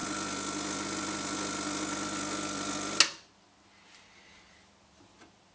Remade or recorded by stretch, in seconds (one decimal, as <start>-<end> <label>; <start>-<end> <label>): 0.0-5.5 recorded